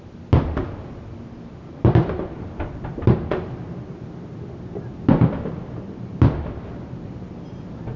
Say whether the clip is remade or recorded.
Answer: recorded